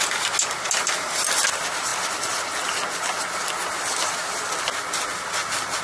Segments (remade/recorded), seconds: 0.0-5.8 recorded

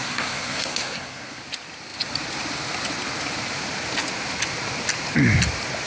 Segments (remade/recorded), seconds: 0.0-1.4 remade; 1.4-5.9 recorded

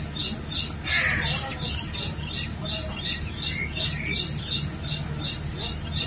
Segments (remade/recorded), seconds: 0.0-6.1 recorded

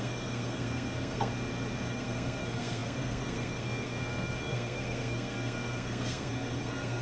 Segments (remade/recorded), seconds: 0.0-1.3 remade; 1.3-1.9 recorded; 1.9-7.0 remade

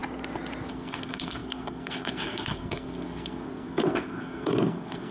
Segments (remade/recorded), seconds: 0.0-0.7 recorded; 0.7-5.1 remade

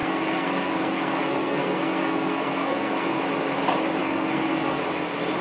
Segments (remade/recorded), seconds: 0.0-3.2 remade; 3.2-4.0 recorded; 4.0-4.8 remade; 4.8-5.4 recorded

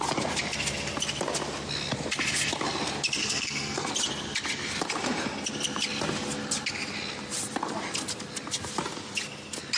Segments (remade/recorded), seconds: 0.0-3.2 recorded; 3.2-3.9 remade; 3.9-9.8 recorded

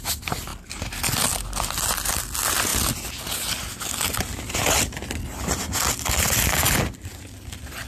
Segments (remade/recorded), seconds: 0.0-7.9 recorded